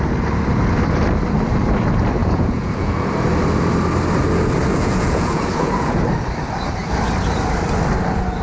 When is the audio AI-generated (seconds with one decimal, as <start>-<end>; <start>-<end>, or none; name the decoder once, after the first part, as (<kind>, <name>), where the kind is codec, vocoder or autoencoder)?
2.2-3.1 (vocoder, Vocos); 4.7-5.9